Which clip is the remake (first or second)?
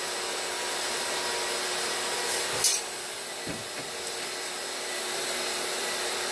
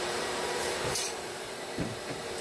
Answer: second